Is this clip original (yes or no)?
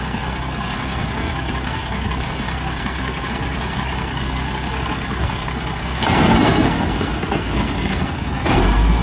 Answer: no